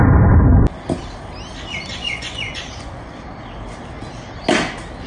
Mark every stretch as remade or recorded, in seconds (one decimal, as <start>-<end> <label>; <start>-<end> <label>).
0.0-1.9 recorded; 1.9-3.2 remade; 3.2-5.1 recorded